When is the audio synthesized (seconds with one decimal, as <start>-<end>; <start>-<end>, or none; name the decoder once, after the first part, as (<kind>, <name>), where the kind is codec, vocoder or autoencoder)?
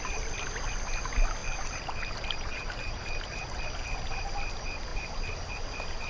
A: 1.4-3.6 (vocoder, BigVGAN v2); 4.9-5.5